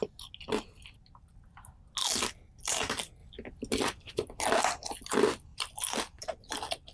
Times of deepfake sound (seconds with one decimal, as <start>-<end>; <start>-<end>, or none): 5.5-6.2